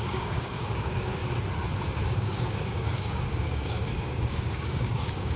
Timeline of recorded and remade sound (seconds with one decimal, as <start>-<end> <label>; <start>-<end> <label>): 0.0-1.2 remade; 1.2-2.0 recorded; 2.0-5.4 remade